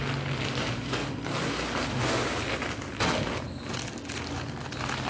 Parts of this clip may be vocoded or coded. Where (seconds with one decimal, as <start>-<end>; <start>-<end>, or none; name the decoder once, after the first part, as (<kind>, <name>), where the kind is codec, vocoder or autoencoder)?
none